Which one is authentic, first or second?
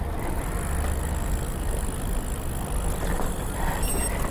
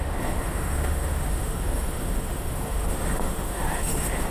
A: first